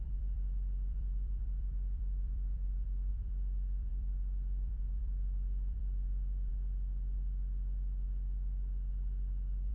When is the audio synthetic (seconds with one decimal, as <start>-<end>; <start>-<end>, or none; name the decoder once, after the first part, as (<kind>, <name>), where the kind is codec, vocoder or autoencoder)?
0.0-6.5 (vocoder, BigVGAN v2)